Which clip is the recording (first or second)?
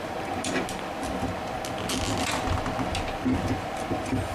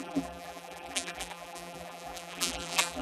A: first